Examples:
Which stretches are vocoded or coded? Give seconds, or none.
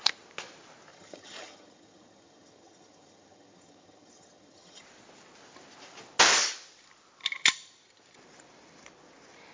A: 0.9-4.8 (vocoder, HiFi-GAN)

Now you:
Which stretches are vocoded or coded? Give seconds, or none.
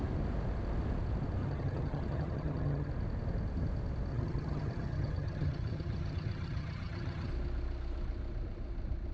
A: 1.4-2.9 (vocoder, HiFi-GAN); 4.1-7.3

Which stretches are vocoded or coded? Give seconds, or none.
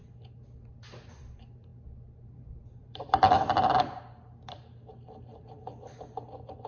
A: none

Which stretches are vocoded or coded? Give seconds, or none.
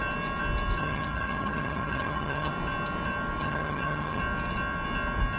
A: 0.8-2.5 (vocoder, HiFi-GAN); 3.4-4.2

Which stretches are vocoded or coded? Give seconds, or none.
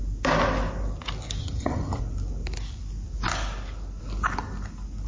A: 1.4-2.0 (vocoder, HiFi-GAN)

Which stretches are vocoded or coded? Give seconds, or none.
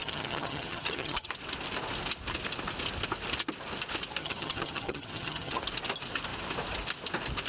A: 0.0-1.3 (vocoder, HiFi-GAN); 4.2-5.6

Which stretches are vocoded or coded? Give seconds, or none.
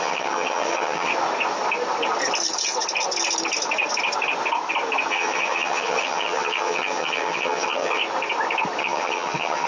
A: 0.0-1.1 (vocoder, HiFi-GAN); 5.1-8.0; 8.8-9.7